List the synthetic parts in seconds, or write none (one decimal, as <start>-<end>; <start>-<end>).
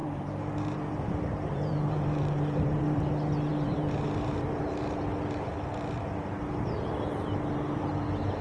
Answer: 0.0-3.0; 3.5-4.7